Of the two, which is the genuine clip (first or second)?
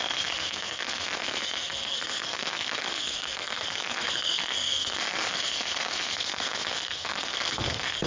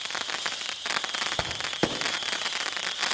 second